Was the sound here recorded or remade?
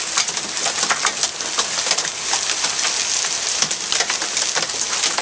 recorded